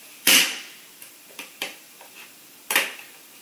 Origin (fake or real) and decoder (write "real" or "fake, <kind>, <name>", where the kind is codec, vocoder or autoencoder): fake, vocoder, BigVGAN v2